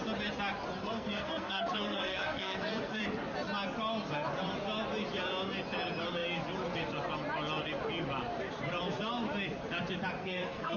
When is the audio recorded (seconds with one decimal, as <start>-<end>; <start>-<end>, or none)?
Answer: 0.0-0.8; 3.0-10.2